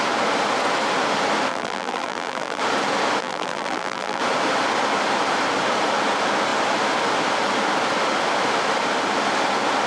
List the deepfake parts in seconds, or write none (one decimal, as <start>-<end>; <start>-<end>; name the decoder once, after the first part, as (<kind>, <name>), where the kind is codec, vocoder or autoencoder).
1.5-2.6 (vocoder, BigVGAN v2); 3.2-4.2